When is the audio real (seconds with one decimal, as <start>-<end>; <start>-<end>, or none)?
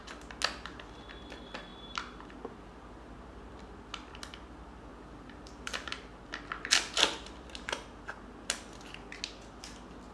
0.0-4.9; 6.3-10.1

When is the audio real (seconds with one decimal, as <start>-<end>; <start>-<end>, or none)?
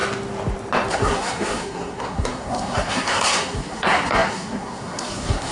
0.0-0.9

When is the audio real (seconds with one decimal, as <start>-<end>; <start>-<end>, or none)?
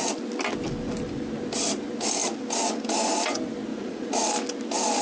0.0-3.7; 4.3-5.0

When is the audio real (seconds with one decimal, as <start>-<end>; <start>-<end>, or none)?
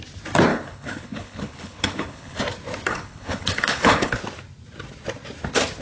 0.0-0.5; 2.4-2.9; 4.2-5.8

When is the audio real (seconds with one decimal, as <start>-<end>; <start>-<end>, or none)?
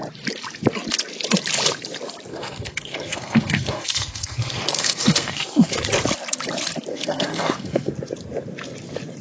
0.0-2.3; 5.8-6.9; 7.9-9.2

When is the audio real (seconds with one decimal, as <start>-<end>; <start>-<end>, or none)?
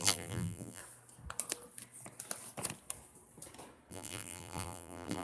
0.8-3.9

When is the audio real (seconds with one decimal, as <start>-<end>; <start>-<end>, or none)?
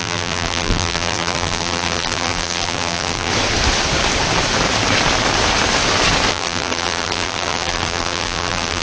3.3-6.3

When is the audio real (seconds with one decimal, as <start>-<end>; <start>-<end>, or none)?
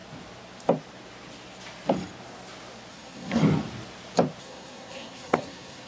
0.0-2.9; 3.4-4.4